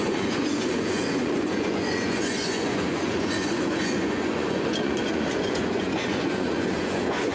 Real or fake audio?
fake